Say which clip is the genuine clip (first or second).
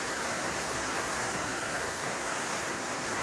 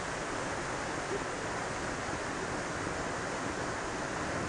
second